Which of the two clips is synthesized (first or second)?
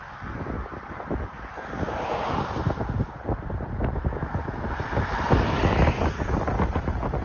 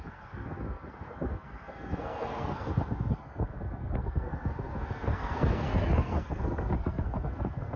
second